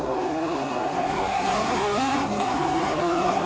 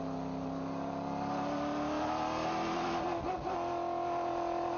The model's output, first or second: first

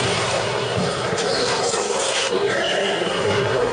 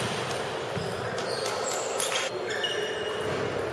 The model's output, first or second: first